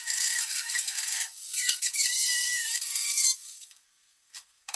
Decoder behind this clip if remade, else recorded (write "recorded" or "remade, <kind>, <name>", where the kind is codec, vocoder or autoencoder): remade, codec, SNAC